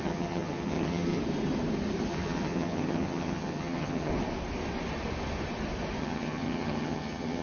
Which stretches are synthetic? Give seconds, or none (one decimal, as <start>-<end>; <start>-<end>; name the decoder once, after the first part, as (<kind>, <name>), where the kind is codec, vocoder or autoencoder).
0.0-1.2 (vocoder, HiFi-GAN); 2.1-4.1; 6.0-7.4